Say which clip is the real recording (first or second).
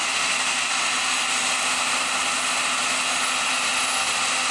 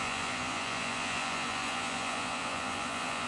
first